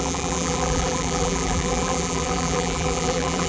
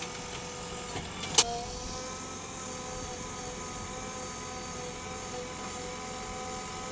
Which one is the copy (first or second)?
first